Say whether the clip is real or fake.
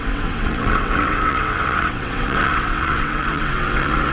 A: fake